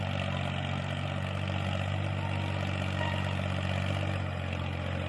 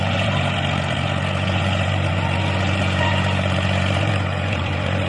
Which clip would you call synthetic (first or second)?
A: second